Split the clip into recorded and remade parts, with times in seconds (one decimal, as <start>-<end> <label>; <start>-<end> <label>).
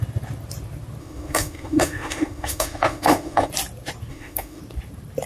0.0-1.0 recorded; 1.0-3.5 remade; 3.5-4.1 recorded; 4.1-4.6 remade; 4.6-5.3 recorded